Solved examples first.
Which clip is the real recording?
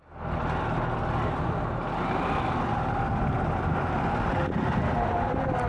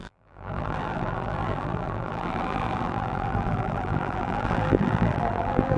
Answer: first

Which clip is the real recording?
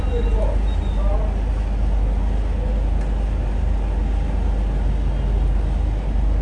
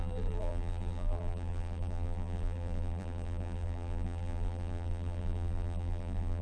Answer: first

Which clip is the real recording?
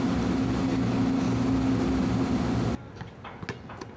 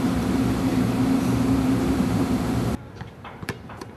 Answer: first